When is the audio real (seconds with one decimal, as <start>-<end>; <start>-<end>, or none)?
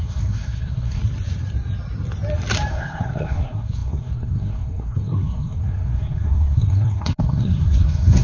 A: 1.0-2.7